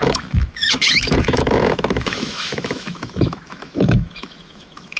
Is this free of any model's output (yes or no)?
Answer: no